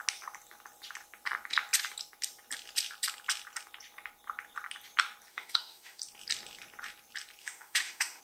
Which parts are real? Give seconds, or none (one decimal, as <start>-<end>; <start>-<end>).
0.0-5.3; 6.0-7.4